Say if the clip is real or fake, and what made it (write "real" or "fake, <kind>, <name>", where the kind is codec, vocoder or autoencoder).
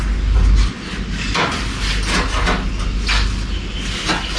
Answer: real